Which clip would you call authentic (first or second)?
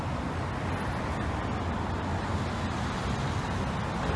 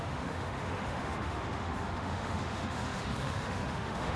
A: first